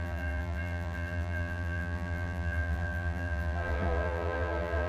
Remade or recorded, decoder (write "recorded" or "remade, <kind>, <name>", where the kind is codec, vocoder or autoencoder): remade, vocoder, BigVGAN v2